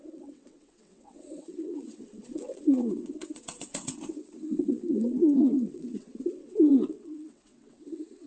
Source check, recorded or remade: remade